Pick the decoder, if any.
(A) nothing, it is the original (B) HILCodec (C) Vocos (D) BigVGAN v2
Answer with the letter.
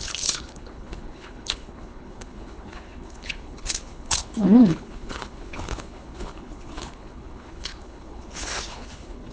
B